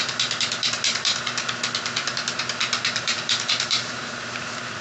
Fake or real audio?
real